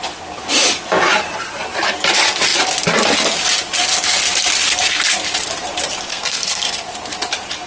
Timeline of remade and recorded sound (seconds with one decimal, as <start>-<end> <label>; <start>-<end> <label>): 0.0-6.1 recorded; 6.1-6.9 remade; 6.9-7.7 recorded